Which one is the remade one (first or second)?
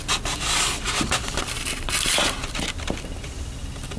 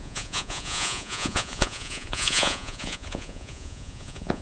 second